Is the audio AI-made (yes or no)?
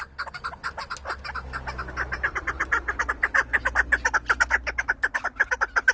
no